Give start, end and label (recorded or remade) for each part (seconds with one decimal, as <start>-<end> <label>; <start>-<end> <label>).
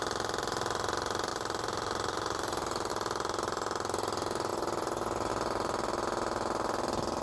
0.0-1.3 recorded; 1.3-2.9 remade; 2.9-7.2 recorded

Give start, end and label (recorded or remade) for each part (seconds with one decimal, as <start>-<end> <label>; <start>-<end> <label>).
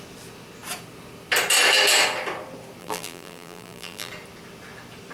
0.0-2.8 recorded; 2.8-4.1 remade; 4.1-5.1 recorded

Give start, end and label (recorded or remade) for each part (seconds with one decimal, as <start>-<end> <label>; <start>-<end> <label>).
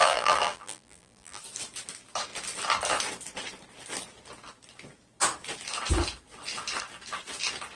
0.0-1.4 remade; 1.4-7.8 recorded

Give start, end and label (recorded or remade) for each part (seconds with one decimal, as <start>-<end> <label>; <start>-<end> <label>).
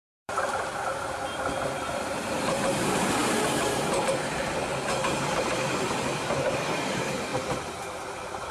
0.0-3.2 remade; 3.2-4.0 recorded; 4.0-4.7 remade; 4.7-5.5 recorded; 5.5-8.5 remade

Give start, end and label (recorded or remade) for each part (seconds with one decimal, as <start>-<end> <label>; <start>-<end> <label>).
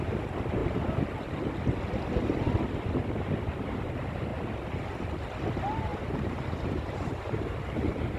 0.0-5.9 recorded; 5.9-8.2 remade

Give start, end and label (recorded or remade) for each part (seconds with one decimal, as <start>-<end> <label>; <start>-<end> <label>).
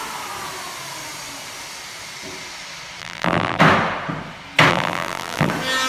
0.0-3.0 recorded; 3.0-3.6 remade; 3.6-4.7 recorded; 4.7-5.5 remade; 5.5-5.9 recorded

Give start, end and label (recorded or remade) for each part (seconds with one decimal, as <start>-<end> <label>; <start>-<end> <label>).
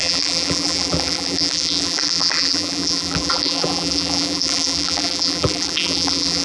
0.0-6.4 remade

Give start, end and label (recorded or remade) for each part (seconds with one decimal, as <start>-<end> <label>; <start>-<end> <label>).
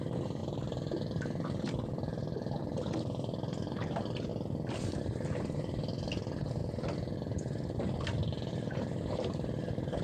0.0-4.3 remade; 4.3-5.0 recorded; 5.0-6.6 remade; 6.6-8.5 recorded; 8.5-10.0 remade